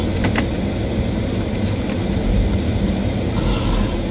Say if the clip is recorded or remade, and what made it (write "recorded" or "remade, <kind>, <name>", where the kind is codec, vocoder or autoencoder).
recorded